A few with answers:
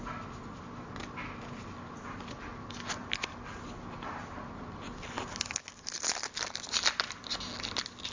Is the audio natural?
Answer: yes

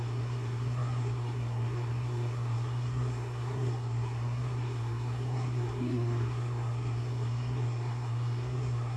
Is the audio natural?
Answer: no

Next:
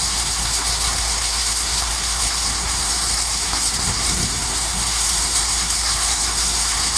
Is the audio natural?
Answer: no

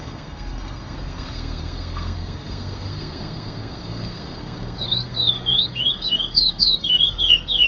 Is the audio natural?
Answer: no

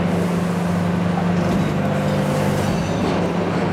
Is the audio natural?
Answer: yes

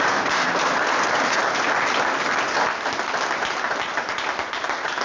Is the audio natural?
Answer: yes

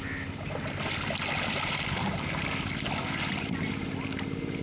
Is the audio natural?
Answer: yes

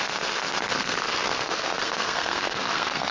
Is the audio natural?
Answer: no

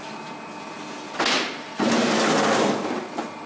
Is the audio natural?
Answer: yes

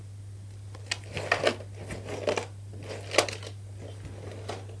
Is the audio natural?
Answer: yes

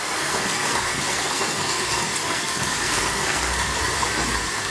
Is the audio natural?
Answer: no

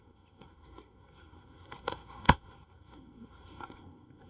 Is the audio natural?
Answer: no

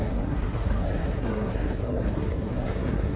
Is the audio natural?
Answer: no